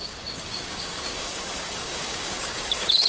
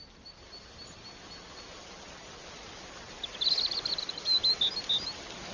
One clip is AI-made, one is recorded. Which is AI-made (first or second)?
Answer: first